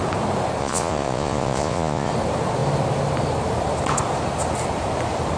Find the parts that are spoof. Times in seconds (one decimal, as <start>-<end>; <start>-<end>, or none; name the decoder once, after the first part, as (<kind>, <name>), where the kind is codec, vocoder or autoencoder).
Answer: 0.6-2.1 (vocoder, Vocos)